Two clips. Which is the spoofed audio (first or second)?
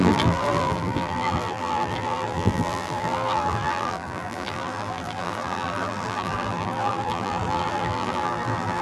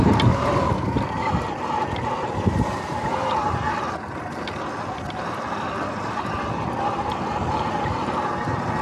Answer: first